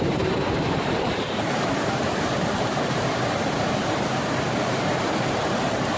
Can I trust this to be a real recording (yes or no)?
no